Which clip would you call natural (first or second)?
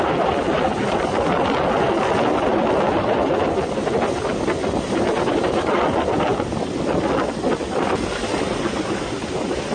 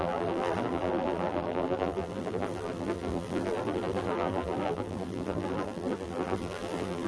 first